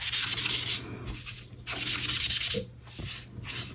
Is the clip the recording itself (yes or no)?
yes